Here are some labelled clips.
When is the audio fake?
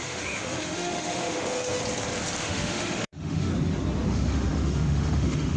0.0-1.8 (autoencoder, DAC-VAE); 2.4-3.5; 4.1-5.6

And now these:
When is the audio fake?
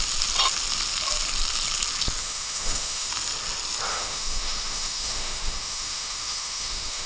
2.2-3.1 (autoencoder, DAC-VAE); 3.9-7.1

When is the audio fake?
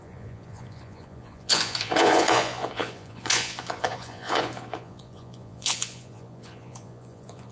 0.0-7.5 (vocoder, Vocos)